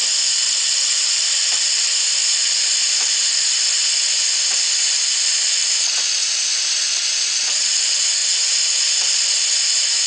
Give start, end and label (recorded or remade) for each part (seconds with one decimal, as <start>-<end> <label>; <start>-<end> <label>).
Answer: 0.0-10.1 recorded